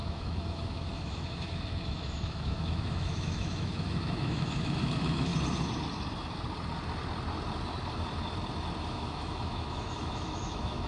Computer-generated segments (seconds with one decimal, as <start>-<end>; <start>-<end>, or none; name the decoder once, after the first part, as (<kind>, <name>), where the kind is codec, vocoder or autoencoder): 0.0-5.3 (autoencoder, DAC-VAE); 8.8-10.9